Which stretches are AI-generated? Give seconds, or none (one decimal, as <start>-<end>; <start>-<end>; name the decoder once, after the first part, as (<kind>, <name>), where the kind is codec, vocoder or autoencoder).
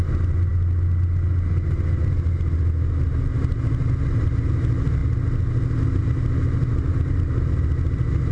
none